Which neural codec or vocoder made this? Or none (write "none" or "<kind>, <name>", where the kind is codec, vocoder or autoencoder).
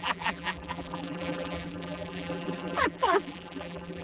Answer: vocoder, BigVGAN v2